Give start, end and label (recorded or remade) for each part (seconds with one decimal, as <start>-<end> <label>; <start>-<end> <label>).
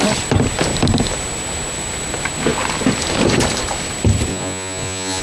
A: 0.0-4.3 recorded; 4.3-5.2 remade